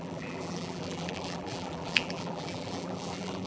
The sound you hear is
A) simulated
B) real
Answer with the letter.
A